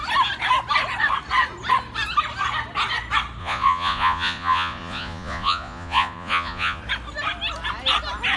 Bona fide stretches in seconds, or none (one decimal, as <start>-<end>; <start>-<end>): 0.0-3.4; 6.8-8.4